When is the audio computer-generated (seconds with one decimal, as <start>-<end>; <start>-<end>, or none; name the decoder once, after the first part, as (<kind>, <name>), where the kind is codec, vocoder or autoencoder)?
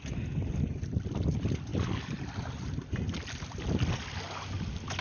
none